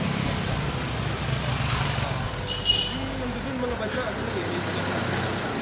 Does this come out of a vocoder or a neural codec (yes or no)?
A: no